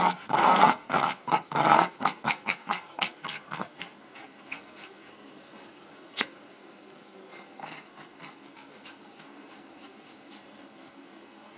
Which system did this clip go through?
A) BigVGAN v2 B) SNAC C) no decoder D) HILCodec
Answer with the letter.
B